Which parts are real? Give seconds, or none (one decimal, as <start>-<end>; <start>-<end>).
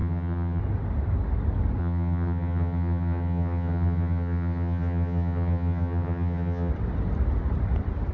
0.6-1.8; 6.7-8.1